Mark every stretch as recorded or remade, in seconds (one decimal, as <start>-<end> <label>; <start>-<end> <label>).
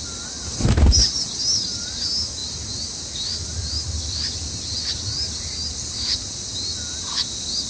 0.0-7.7 recorded